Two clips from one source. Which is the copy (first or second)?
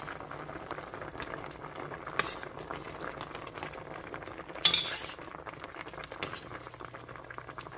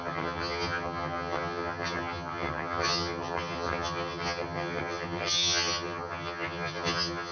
second